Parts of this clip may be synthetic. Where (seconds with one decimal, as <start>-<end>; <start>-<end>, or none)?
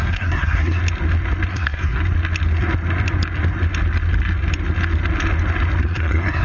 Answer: 0.0-0.8; 1.5-2.0; 5.8-6.4